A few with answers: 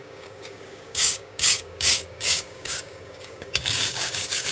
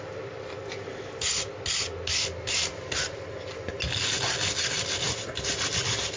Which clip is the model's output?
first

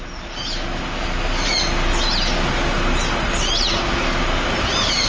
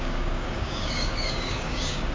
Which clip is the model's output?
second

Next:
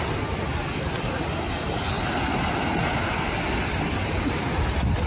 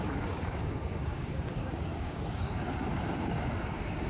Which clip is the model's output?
second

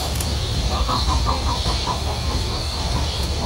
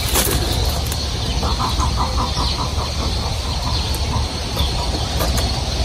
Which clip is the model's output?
first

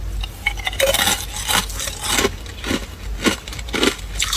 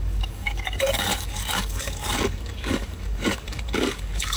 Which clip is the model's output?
second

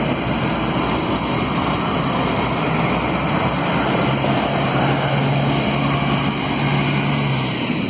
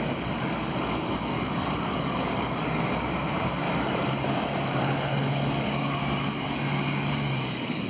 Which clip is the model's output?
second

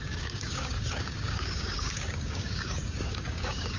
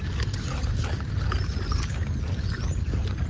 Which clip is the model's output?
first